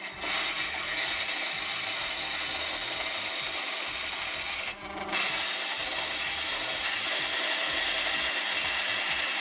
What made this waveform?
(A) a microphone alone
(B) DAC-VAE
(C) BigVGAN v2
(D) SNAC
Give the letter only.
A